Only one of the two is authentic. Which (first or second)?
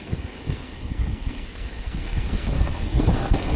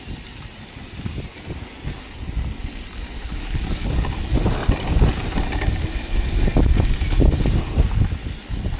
second